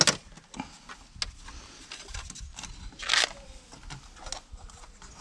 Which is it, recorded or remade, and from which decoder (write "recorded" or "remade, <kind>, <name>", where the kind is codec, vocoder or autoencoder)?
recorded